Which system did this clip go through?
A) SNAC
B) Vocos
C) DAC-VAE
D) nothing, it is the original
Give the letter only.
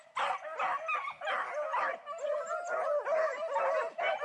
D